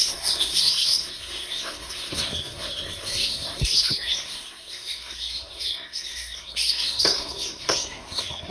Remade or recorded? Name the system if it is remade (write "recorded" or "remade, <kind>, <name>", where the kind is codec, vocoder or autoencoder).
remade, codec, SNAC